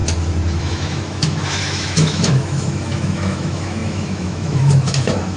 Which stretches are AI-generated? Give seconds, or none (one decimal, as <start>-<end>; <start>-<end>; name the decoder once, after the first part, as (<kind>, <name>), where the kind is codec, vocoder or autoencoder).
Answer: 0.6-5.4 (autoencoder, DAC-VAE)